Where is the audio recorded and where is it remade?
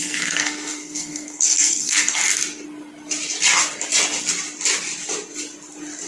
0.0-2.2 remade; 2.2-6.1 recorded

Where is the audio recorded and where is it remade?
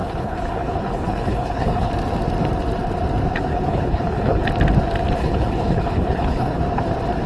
0.0-1.9 remade; 1.9-3.5 recorded; 3.5-4.4 remade; 4.4-5.2 recorded; 5.2-6.6 remade; 6.6-7.3 recorded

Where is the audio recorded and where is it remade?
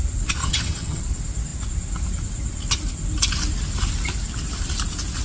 0.0-0.4 recorded; 0.4-1.0 remade; 1.0-5.2 recorded